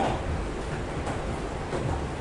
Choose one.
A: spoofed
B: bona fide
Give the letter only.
B